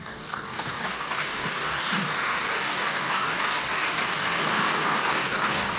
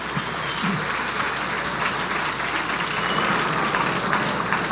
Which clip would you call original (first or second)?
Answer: second